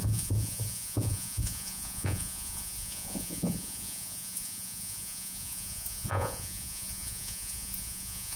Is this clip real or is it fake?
fake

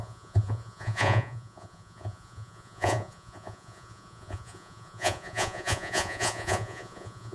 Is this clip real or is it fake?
fake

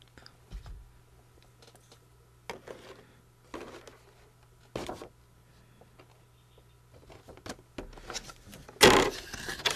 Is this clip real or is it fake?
real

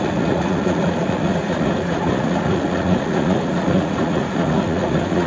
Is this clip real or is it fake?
fake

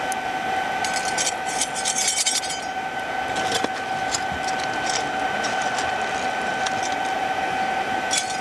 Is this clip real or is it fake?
real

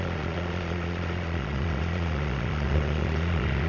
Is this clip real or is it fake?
fake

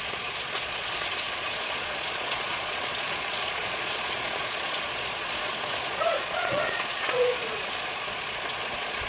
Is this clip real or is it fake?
fake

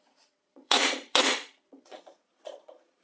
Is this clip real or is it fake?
fake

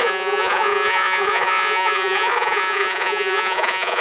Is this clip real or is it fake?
fake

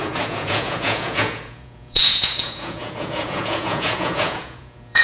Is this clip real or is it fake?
fake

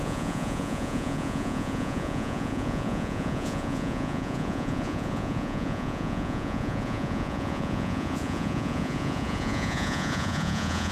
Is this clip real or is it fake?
fake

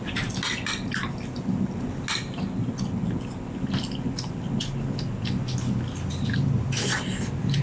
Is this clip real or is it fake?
real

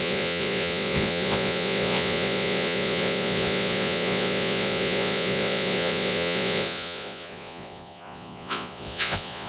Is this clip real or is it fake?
fake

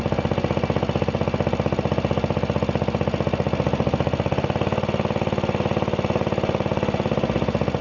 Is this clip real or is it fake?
real